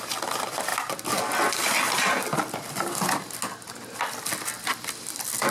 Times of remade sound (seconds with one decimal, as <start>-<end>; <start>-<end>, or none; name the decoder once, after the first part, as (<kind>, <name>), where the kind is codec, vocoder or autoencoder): none